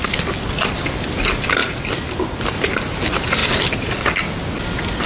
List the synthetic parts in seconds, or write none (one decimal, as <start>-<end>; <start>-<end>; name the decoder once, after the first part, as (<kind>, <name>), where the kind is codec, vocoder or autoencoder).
none

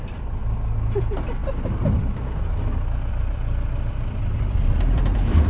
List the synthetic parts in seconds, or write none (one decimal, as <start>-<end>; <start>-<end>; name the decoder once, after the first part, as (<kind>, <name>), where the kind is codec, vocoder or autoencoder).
0.0-1.4 (vocoder, BigVGAN v2); 3.1-5.5

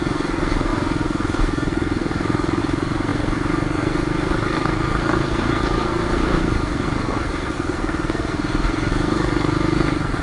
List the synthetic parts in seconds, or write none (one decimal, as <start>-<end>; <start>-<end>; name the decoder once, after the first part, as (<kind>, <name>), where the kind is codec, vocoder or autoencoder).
0.0-10.2 (codec, SNAC)

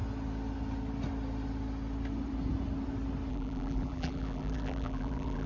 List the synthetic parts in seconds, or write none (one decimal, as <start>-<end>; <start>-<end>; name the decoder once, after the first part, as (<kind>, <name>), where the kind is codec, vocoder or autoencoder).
3.3-5.5 (vocoder, BigVGAN v2)

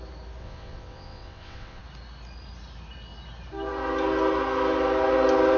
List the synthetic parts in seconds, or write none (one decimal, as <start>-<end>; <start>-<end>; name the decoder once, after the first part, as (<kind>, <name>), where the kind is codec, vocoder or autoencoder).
0.4-1.8 (vocoder, WaveNeXt)

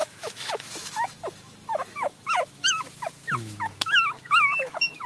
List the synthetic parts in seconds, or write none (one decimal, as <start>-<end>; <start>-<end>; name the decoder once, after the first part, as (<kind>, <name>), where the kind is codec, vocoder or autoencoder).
0.0-5.1 (autoencoder, DAC-VAE)

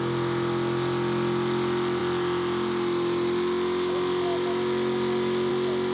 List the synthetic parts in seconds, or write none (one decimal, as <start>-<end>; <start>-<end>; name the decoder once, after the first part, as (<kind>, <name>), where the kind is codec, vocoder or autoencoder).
none

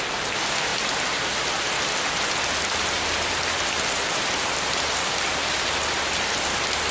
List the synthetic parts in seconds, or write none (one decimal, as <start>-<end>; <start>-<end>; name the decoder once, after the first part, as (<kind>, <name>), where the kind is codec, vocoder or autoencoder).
none